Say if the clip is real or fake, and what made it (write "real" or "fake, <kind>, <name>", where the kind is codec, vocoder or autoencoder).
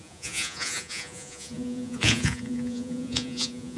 fake, vocoder, Vocos